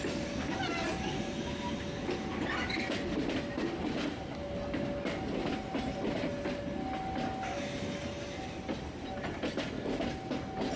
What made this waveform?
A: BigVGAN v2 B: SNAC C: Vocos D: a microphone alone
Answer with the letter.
D